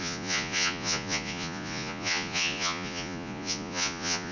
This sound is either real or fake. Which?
fake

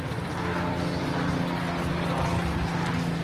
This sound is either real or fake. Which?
real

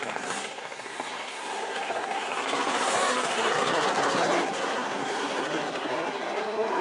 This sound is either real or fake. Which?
fake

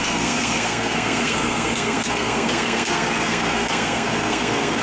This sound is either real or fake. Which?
fake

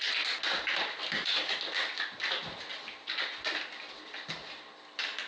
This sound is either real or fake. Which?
real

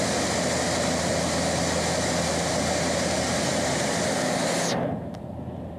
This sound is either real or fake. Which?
real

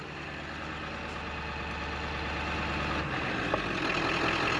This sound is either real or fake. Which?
real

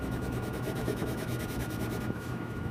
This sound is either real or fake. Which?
fake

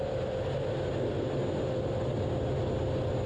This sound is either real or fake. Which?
real